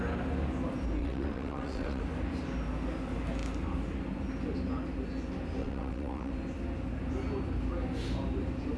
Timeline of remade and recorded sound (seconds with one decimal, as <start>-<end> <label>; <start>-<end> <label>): 0.0-1.0 recorded; 1.0-2.0 remade; 2.0-5.6 recorded; 5.6-6.3 remade; 6.3-8.8 recorded